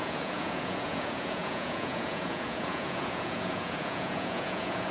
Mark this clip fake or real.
fake